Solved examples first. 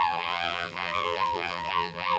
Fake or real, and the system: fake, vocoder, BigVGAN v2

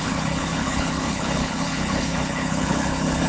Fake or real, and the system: fake, codec, HILCodec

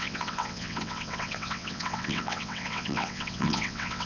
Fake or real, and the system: fake, vocoder, WaveNeXt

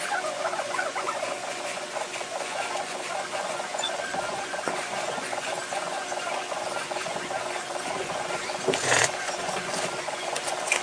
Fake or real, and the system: fake, vocoder, Vocos